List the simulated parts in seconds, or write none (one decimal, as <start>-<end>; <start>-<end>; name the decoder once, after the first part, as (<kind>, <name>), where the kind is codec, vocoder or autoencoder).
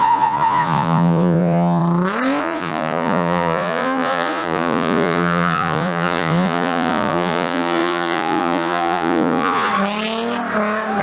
0.0-1.8 (vocoder, Vocos); 2.4-9.7